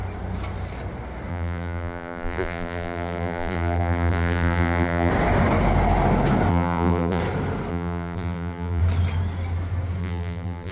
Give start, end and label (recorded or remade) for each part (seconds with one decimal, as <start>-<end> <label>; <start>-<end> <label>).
0.0-1.3 recorded; 1.3-5.1 remade; 5.1-6.5 recorded; 6.5-7.2 remade; 7.2-7.7 recorded; 7.7-8.8 remade; 8.8-10.0 recorded; 10.0-10.7 remade